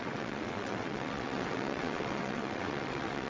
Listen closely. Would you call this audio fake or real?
fake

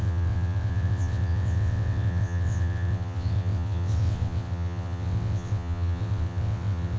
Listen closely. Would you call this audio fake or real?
fake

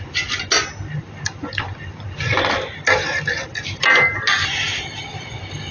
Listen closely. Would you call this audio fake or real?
real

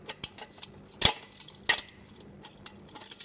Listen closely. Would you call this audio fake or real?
real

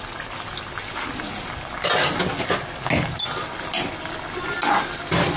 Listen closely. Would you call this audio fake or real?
real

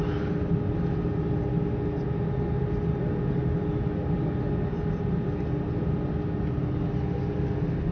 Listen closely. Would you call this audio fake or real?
real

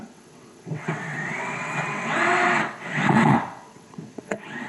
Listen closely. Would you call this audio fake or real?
fake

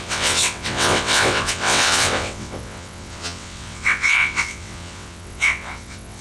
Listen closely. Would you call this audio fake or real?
fake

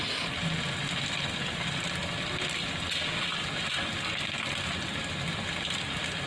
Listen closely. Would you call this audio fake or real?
real